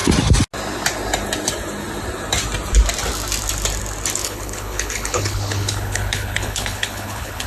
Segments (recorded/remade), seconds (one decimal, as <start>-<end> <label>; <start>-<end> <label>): 0.0-4.2 recorded; 4.2-7.5 remade